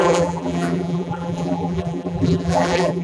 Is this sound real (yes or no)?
no